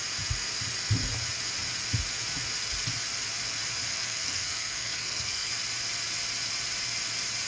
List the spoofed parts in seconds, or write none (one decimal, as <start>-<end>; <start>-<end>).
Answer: 3.9-5.5